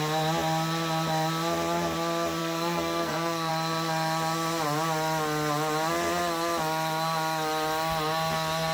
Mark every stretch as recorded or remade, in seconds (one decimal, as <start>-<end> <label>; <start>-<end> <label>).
0.0-2.4 recorded; 2.4-3.5 remade; 3.5-8.7 recorded